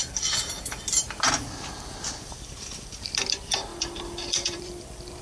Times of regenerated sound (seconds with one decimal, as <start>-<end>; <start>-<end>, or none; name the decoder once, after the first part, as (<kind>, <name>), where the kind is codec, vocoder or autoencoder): 2.3-5.2 (vocoder, BigVGAN v2)